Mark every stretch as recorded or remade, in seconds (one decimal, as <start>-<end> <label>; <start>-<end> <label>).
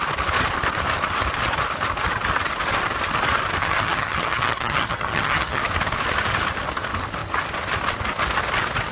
0.0-3.6 recorded; 3.6-5.6 remade; 5.6-8.9 recorded